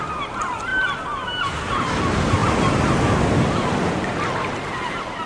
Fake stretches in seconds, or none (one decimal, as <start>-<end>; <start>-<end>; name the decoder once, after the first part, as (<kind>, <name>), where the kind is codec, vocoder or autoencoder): none